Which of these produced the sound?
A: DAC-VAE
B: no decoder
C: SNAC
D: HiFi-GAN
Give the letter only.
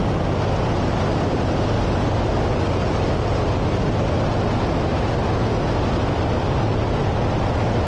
B